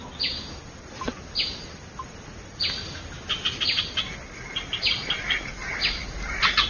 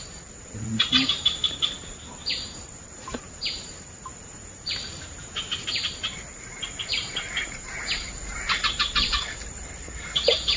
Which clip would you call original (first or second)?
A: first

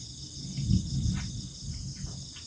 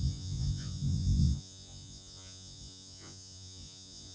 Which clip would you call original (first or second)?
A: first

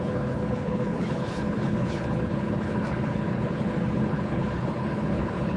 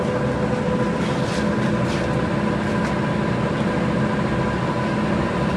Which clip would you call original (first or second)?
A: second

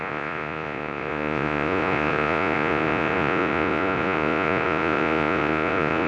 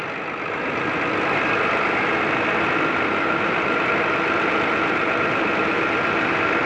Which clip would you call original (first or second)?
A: second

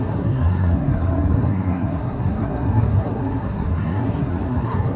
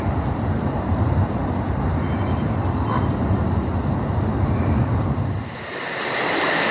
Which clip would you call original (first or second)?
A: second